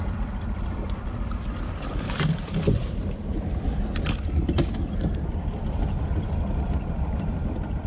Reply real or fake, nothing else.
fake